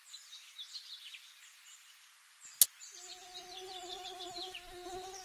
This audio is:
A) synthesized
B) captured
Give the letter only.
B